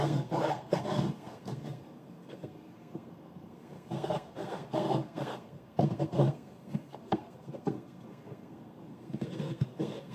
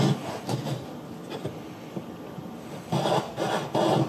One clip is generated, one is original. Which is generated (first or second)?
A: first